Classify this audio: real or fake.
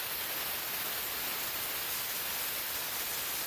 real